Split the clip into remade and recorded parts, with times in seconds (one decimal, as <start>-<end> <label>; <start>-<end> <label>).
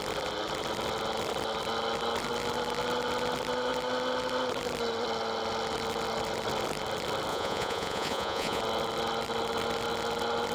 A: 0.0-7.3 recorded; 7.3-8.6 remade; 8.6-10.5 recorded